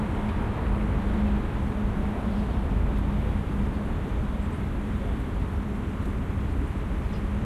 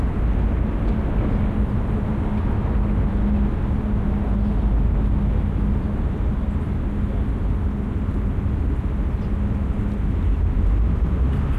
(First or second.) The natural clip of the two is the second